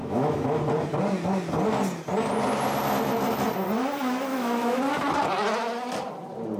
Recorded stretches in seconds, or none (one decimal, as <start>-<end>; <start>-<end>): 0.6-4.3; 4.8-6.6